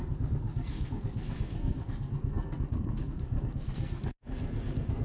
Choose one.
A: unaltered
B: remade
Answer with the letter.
B